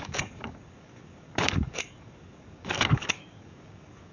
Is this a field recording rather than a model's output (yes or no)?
no